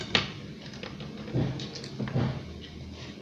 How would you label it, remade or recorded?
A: recorded